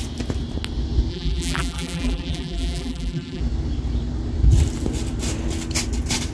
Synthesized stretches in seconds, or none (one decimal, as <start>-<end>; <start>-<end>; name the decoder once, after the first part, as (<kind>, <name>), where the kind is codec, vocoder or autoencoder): 1.1-3.4 (vocoder, BigVGAN v2)